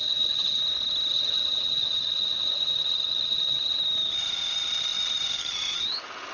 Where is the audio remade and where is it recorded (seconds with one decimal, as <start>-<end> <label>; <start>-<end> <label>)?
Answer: 0.0-0.6 remade; 0.6-1.1 recorded; 1.1-3.8 remade; 3.8-6.3 recorded